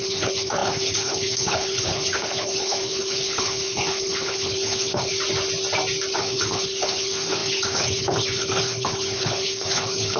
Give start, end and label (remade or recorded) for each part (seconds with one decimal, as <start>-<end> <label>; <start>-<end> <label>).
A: 0.0-5.1 remade; 5.1-6.2 recorded; 6.2-10.2 remade